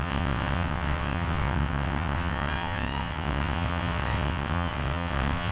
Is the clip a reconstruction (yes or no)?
yes